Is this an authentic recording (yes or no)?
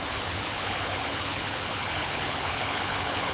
no